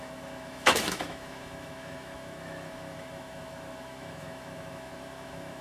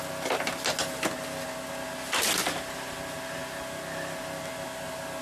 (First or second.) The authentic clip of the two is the second